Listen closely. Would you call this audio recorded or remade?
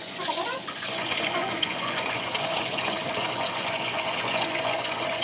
remade